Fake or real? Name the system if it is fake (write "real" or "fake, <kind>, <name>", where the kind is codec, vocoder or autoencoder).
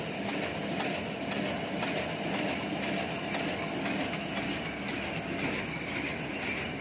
real